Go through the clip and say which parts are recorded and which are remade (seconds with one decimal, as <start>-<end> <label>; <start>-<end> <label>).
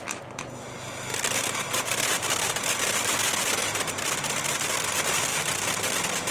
0.0-1.1 recorded; 1.1-2.5 remade; 2.5-6.3 recorded